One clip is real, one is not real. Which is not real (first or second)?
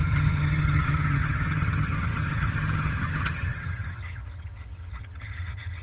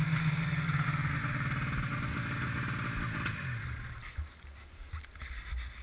first